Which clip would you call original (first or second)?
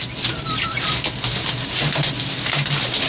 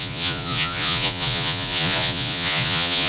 first